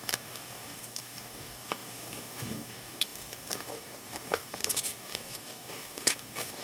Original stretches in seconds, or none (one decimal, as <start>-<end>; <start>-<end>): none

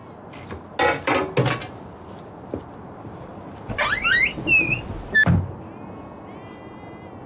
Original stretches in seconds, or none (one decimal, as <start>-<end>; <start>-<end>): 0.0-7.3

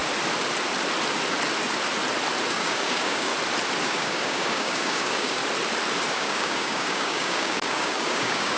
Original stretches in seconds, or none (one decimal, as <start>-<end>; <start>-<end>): 0.0-2.5; 3.3-3.8; 5.4-6.1

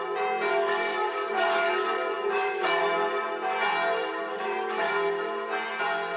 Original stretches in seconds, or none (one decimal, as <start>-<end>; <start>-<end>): 0.0-0.5; 2.8-4.3; 4.9-6.2

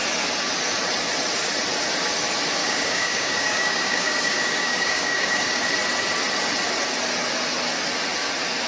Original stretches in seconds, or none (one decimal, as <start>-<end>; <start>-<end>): 0.0-2.6; 5.7-8.7

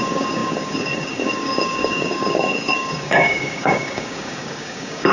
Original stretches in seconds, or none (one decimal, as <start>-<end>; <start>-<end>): none

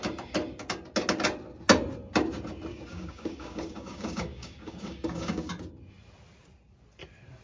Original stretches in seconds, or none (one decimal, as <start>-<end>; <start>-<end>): 0.0-2.7; 5.5-7.4